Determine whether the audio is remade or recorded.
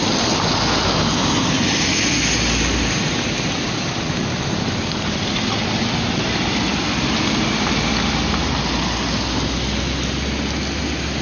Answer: recorded